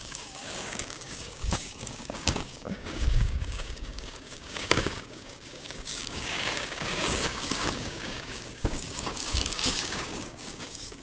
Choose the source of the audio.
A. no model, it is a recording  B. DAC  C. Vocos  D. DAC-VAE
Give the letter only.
B